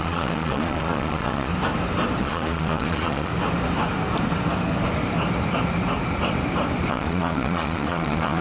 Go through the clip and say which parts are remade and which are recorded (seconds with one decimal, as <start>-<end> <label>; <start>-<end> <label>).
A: 0.0-1.5 remade; 1.5-2.2 recorded; 2.2-3.3 remade; 3.3-6.9 recorded; 6.9-8.4 remade